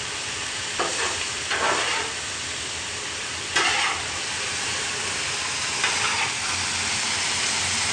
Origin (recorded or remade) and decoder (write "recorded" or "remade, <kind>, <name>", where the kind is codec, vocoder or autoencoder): recorded